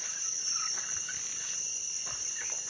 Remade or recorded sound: recorded